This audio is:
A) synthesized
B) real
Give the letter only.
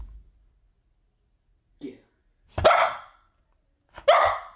B